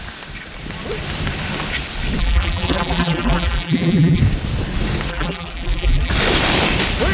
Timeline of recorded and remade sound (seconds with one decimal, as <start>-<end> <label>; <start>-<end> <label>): 0.0-2.2 recorded; 2.2-4.2 remade; 4.2-5.1 recorded; 5.1-6.1 remade; 6.1-7.1 recorded